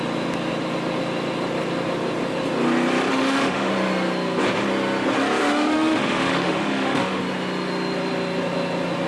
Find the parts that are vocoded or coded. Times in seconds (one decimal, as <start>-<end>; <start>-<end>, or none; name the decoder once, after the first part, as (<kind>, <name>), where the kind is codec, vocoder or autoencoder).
3.1-3.7 (autoencoder, DAC-VAE); 5.4-7.2